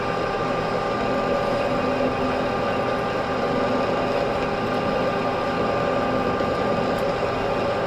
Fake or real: real